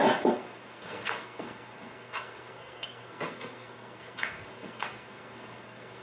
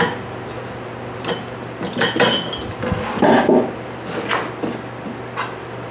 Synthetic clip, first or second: first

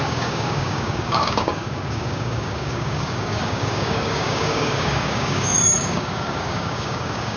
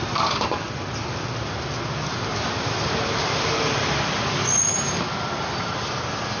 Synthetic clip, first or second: first